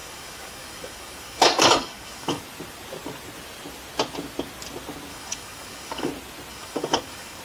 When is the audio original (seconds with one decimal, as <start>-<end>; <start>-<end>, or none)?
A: 2.4-5.1; 6.1-6.5